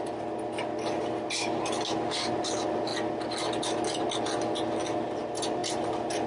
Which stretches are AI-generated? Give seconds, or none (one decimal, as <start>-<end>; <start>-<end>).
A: none

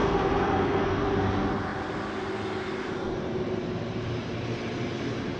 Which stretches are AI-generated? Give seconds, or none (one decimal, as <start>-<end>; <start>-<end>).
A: 0.0-1.0

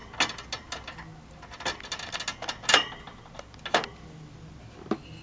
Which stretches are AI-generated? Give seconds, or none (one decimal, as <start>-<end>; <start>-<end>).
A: none

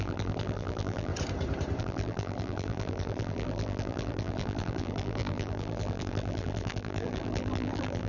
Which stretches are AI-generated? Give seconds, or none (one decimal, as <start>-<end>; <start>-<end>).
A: 0.0-1.1; 1.8-8.1

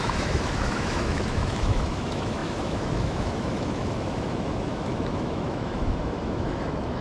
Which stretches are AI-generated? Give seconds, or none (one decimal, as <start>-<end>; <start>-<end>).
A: 0.0-7.0

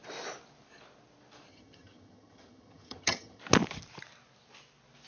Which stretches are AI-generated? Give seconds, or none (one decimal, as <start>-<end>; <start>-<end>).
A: 1.5-3.4